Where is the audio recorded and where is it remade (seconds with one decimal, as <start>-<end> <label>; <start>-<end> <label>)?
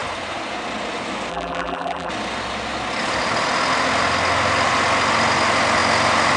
0.0-1.3 recorded; 1.3-2.1 remade; 2.1-6.4 recorded